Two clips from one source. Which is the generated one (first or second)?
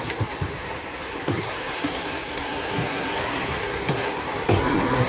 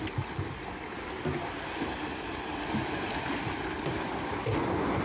first